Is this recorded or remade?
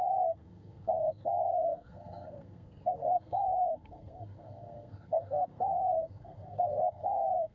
remade